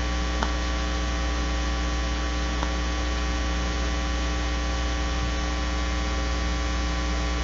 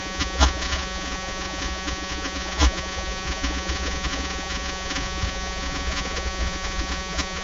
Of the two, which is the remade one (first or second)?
second